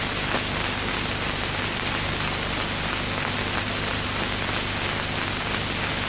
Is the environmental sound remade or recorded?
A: recorded